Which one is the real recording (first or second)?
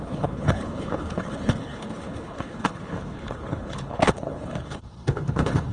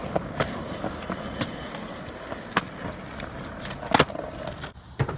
second